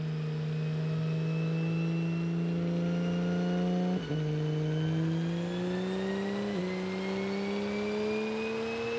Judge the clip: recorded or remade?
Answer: recorded